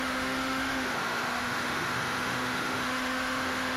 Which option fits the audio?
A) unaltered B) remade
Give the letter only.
B